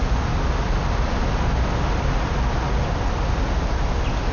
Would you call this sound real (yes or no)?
yes